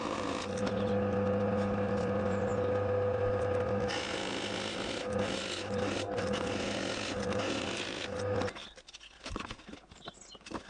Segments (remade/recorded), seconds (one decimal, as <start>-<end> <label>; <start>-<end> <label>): 0.0-10.7 recorded

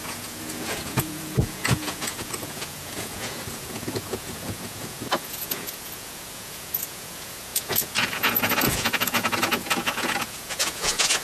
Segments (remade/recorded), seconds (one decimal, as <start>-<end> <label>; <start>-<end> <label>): 0.0-11.2 remade

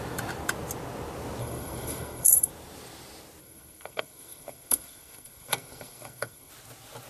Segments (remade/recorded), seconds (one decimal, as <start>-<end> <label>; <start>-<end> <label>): 0.0-1.4 recorded; 1.4-2.5 remade; 2.5-3.4 recorded; 3.4-6.5 remade; 6.5-7.1 recorded

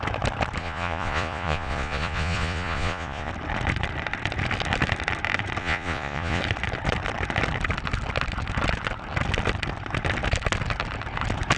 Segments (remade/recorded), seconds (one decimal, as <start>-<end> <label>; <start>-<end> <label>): 0.0-0.6 recorded; 0.6-3.3 remade; 3.3-5.6 recorded; 5.6-6.4 remade; 6.4-11.6 recorded

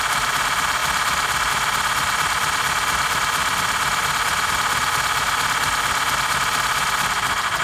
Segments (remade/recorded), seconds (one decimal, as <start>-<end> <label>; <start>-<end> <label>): 0.0-7.6 recorded

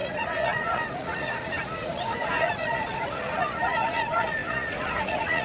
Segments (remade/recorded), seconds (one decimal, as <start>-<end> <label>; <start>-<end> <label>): 0.0-5.4 remade

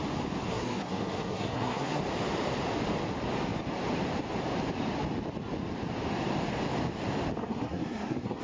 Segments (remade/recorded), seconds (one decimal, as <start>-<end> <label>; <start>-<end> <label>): 0.0-0.5 recorded; 0.5-2.0 remade; 2.0-7.4 recorded; 7.4-8.4 remade